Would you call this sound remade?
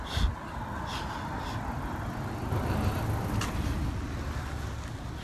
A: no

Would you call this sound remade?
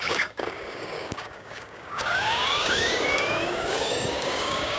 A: yes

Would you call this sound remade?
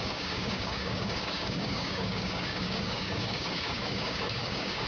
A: yes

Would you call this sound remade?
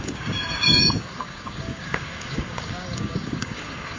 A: yes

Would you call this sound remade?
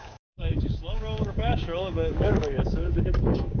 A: yes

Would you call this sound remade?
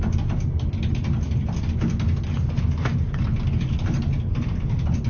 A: no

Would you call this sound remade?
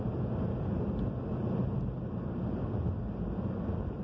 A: no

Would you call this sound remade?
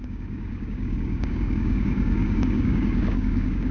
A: yes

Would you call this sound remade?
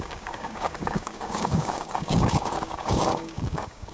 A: yes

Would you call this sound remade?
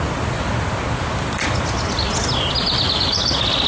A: no